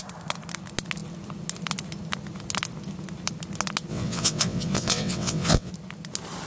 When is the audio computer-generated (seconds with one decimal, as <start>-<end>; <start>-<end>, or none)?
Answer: 3.9-5.7